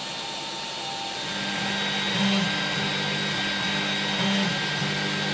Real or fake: real